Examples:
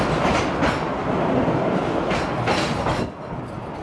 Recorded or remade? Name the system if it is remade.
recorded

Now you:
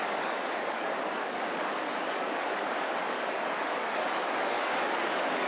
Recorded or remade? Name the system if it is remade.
remade, codec, DAC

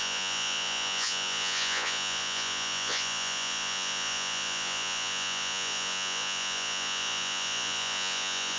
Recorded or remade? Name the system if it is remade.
remade, vocoder, Vocos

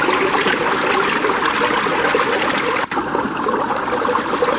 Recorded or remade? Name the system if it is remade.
recorded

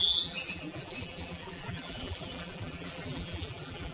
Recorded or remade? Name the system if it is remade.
remade, vocoder, BigVGAN v2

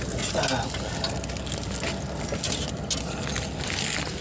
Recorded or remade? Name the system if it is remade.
recorded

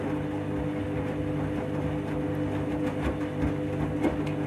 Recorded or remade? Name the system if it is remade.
recorded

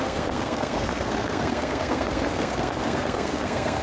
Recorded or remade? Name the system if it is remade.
remade, codec, SNAC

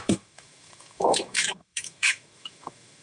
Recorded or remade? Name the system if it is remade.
remade, autoencoder, DAC-VAE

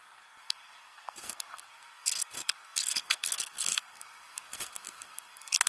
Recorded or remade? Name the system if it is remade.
remade, codec, SNAC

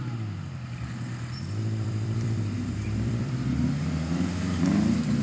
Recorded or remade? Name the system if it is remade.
remade, vocoder, BigVGAN v2